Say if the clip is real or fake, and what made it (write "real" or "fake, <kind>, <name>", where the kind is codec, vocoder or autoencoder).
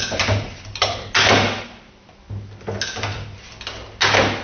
real